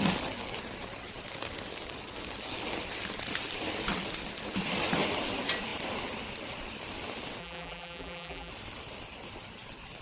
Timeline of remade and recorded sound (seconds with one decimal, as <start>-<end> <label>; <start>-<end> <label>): 0.0-7.4 recorded; 7.4-8.5 remade; 8.5-10.0 recorded